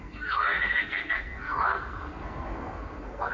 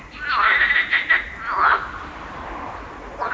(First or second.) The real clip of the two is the second